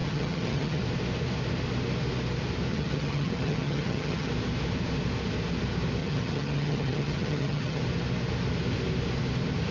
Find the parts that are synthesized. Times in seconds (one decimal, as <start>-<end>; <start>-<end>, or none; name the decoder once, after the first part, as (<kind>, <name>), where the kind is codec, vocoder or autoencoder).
0.0-0.8 (vocoder, HiFi-GAN); 2.7-4.3; 6.0-7.8